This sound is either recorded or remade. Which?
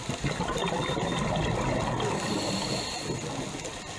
recorded